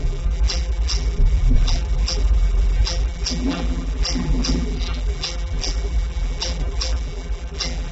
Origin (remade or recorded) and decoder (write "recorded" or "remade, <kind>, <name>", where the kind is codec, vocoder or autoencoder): remade, vocoder, BigVGAN v2